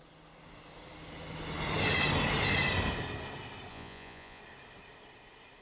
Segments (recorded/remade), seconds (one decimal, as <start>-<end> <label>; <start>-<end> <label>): 0.0-3.7 recorded; 3.7-4.4 remade; 4.4-5.6 recorded